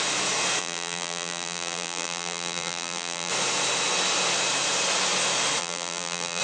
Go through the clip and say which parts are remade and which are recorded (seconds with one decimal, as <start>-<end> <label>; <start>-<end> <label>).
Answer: 0.0-0.6 recorded; 0.6-3.3 remade; 3.3-5.6 recorded; 5.6-6.4 remade